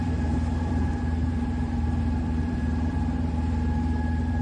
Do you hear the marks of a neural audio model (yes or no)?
yes